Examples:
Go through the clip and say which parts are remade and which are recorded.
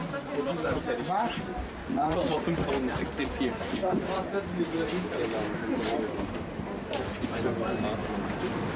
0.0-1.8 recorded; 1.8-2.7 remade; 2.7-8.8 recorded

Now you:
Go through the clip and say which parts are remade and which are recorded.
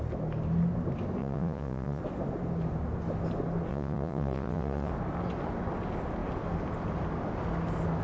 0.0-1.2 recorded; 1.2-2.0 remade; 2.0-3.7 recorded; 3.7-4.9 remade; 4.9-8.0 recorded